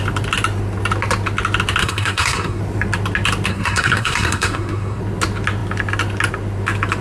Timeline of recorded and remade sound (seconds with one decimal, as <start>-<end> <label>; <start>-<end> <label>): 0.0-1.8 recorded; 1.8-2.6 remade; 2.6-3.5 recorded; 3.5-5.0 remade; 5.0-7.0 recorded